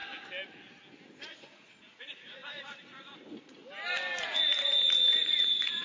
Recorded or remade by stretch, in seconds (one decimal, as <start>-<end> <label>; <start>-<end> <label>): 0.0-1.0 recorded; 1.0-3.6 remade; 3.6-4.2 recorded; 4.2-5.8 remade